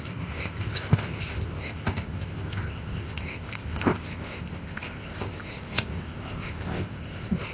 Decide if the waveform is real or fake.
fake